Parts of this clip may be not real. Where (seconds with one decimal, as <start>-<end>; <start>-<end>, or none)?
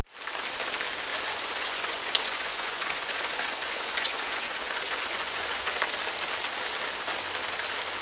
1.1-5.9